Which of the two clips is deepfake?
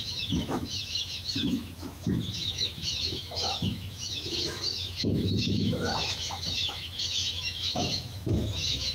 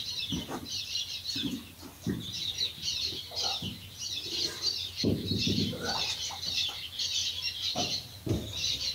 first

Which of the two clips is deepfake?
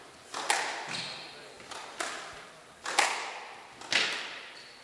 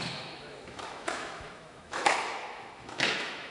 second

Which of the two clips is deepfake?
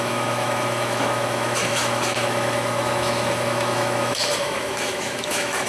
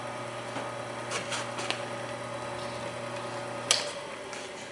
first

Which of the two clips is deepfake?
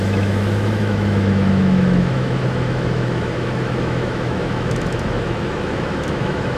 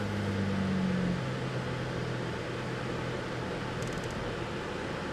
first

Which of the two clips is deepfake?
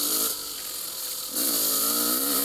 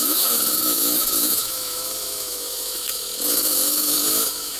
second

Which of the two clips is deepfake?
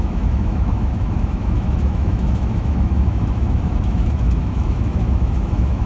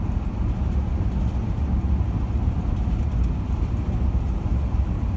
first